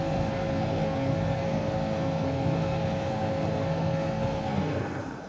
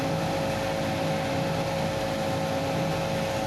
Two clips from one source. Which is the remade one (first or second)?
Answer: first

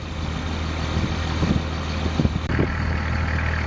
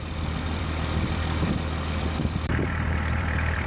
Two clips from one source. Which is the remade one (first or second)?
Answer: second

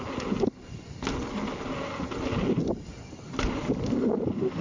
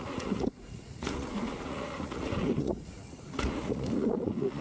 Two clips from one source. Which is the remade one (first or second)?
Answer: second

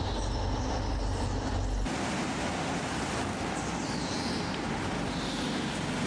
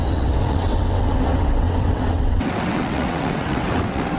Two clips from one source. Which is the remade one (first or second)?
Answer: second